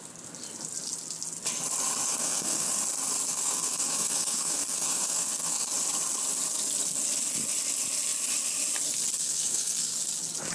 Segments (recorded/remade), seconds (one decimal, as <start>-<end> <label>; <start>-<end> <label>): 0.0-2.1 recorded; 2.1-2.8 remade; 2.8-3.3 recorded; 3.3-5.7 remade; 5.7-9.1 recorded; 9.1-10.0 remade; 10.0-10.5 recorded

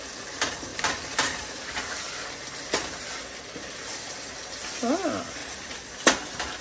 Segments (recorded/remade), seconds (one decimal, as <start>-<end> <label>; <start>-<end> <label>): 0.0-0.7 recorded; 0.7-1.5 remade; 1.5-5.4 recorded; 5.4-6.6 remade